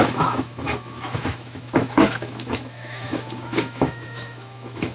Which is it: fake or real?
fake